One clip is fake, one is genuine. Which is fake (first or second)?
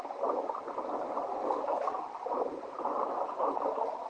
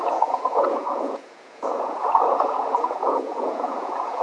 second